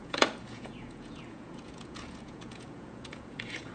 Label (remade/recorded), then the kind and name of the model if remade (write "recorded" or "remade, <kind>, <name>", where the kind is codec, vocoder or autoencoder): remade, vocoder, Vocos